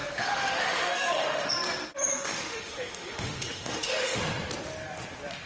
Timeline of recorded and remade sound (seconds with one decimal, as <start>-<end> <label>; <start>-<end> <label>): 0.0-1.5 remade; 1.5-2.1 recorded; 2.1-4.2 remade; 4.2-5.5 recorded

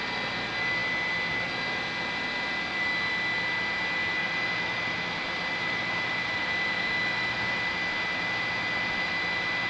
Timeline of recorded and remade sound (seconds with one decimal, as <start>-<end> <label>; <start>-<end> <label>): 0.0-4.2 recorded; 4.2-9.1 remade; 9.1-9.7 recorded

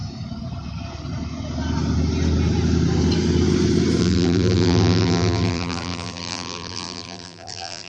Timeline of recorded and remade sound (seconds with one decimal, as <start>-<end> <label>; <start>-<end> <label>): 0.0-4.0 recorded; 4.0-7.9 remade

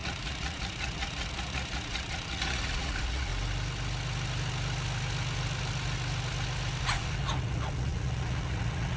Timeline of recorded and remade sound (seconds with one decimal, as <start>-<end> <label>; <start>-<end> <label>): 0.0-3.3 remade; 3.3-6.8 recorded; 6.8-9.0 remade

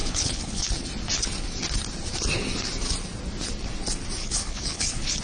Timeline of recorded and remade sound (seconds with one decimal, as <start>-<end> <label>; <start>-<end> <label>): 0.0-0.7 remade; 0.7-4.2 recorded; 4.2-5.2 remade